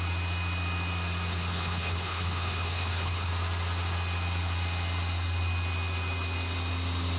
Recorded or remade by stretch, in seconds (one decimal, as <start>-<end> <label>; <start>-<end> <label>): 0.0-1.3 recorded; 1.3-3.3 remade; 3.3-7.2 recorded